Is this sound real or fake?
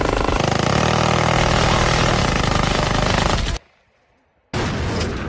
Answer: real